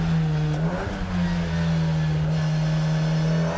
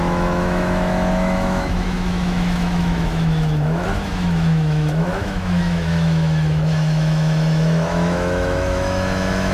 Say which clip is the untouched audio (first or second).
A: first